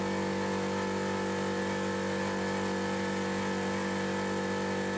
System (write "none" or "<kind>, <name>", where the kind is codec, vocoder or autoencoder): none